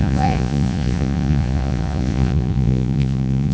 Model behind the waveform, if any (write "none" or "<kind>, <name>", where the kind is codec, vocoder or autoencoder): vocoder, Vocos